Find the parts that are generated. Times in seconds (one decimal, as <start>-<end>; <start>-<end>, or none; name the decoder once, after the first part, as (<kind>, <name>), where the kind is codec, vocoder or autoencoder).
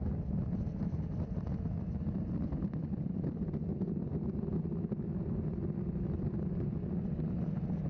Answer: none